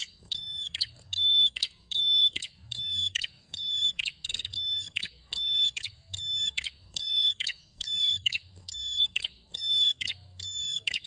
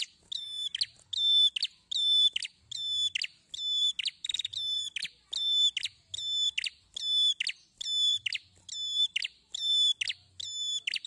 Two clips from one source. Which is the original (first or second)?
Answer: second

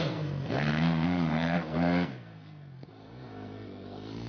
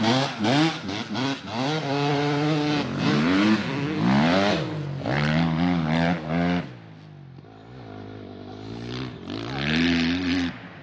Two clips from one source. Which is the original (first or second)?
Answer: second